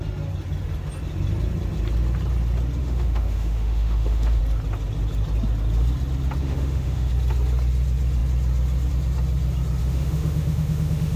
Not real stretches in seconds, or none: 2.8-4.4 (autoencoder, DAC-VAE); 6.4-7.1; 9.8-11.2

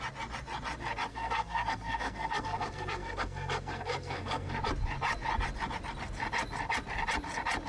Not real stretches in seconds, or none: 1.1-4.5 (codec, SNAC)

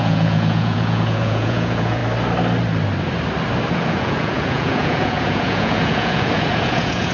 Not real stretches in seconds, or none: 0.0-2.0 (vocoder, Vocos); 3.7-7.1

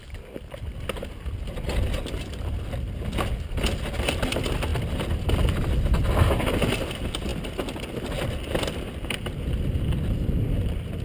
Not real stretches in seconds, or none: none